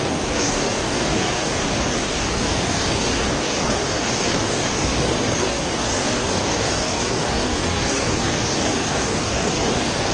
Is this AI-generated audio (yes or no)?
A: yes